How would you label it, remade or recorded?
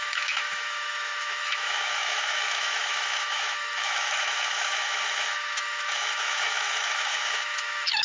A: remade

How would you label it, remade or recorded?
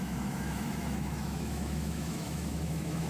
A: remade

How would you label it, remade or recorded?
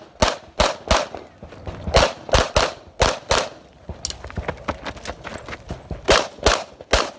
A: recorded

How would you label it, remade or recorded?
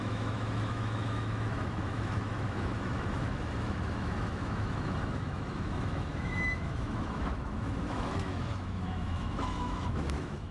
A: remade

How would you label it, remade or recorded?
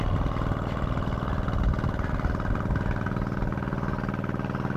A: recorded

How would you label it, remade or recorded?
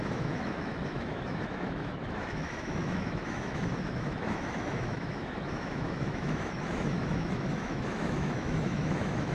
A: remade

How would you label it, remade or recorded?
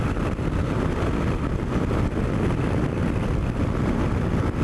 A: recorded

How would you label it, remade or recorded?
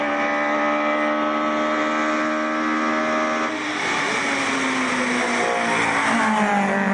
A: recorded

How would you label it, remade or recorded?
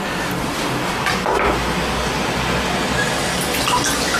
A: recorded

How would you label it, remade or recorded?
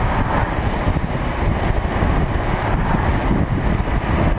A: recorded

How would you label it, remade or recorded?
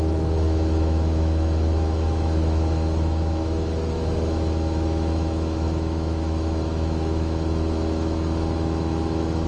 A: remade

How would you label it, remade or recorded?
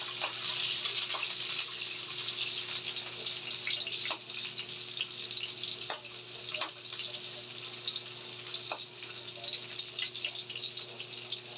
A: recorded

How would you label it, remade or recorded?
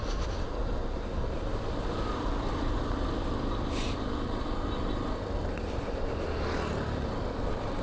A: recorded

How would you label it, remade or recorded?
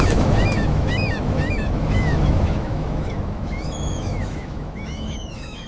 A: remade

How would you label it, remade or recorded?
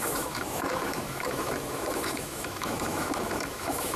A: remade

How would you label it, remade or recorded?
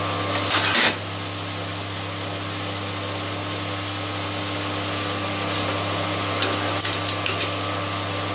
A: recorded